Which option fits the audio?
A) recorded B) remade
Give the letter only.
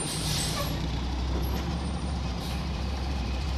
B